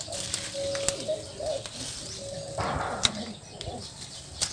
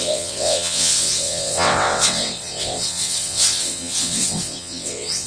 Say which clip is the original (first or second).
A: first